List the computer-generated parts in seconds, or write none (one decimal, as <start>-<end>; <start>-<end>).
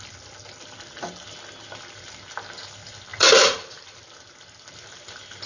3.1-4.3